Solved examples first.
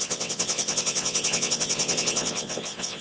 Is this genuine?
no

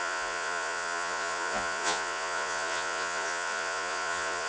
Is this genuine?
no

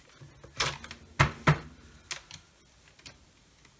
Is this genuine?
yes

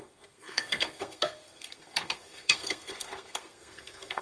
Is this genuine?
no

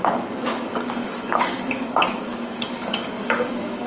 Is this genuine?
no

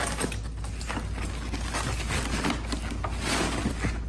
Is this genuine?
yes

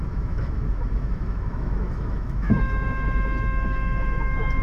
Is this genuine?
no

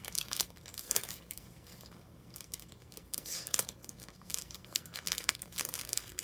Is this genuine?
no